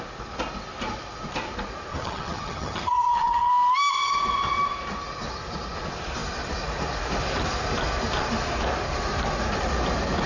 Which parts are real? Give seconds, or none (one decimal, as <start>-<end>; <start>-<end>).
0.0-1.9; 3.5-10.3